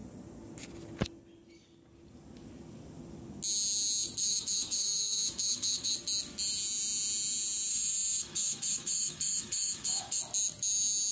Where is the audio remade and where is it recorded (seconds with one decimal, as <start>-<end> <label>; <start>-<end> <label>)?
0.0-4.2 recorded; 4.2-5.9 remade; 5.9-7.7 recorded; 7.7-10.2 remade; 10.2-11.1 recorded